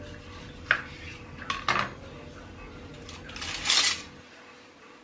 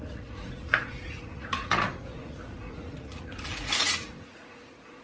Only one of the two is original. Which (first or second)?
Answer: first